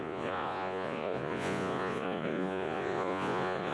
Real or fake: fake